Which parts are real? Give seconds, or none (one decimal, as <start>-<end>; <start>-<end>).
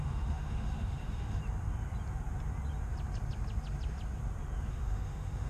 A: 1.4-4.7